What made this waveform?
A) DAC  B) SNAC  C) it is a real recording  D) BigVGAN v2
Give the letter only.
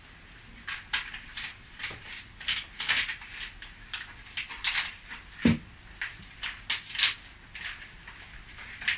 C